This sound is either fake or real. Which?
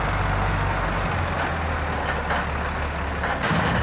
real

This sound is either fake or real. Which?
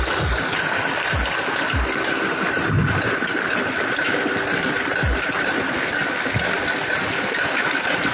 real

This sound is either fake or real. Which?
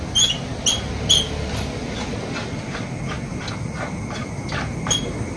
real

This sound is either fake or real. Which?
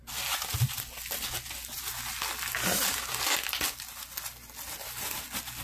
real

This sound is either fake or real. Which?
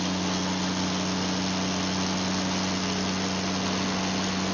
real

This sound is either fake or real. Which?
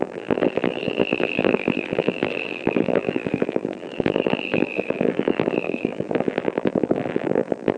fake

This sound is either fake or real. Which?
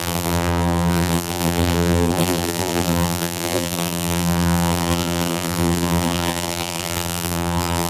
fake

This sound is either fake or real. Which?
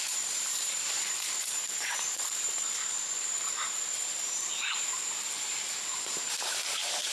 fake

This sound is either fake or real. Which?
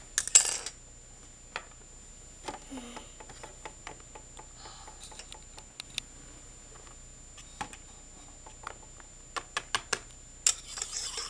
real